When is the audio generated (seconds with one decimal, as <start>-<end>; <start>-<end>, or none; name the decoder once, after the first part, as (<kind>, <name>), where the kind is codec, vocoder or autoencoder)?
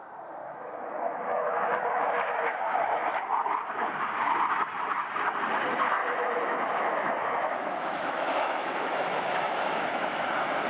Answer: 0.4-3.1 (autoencoder, DAC-VAE); 6.0-10.2